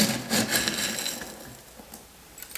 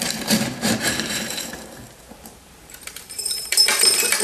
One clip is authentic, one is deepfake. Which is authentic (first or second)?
first